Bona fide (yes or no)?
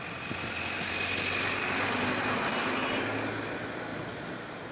yes